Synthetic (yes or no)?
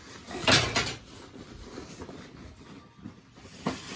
no